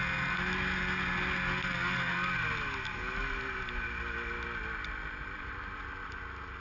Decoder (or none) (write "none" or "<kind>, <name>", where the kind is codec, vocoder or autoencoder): none